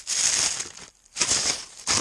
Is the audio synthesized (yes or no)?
no